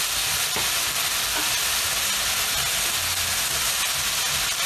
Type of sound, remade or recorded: recorded